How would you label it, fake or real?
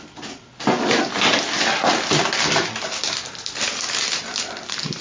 real